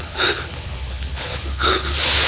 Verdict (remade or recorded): remade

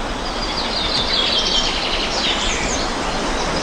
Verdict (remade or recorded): recorded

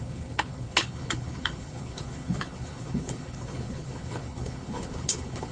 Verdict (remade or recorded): remade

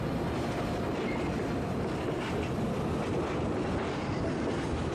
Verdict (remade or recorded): recorded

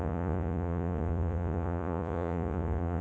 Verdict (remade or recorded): remade